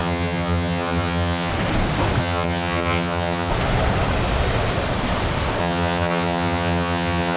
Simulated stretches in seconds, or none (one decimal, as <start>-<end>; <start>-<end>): 0.0-1.5; 2.2-3.5; 5.6-7.4

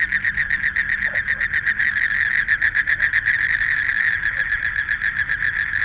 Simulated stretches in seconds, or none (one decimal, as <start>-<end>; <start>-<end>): none